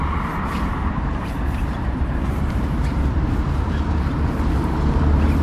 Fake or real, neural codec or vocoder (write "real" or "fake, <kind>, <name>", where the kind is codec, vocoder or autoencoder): fake, vocoder, BigVGAN v2